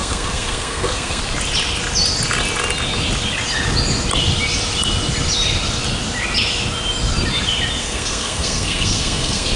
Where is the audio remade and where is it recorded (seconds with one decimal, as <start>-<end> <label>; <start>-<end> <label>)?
0.0-1.2 remade; 1.2-7.8 recorded; 7.8-9.6 remade